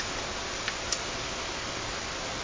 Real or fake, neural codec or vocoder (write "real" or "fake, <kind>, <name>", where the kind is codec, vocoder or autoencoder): real